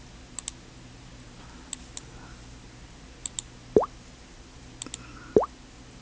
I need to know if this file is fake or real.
real